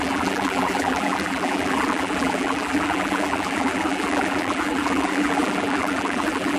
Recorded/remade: remade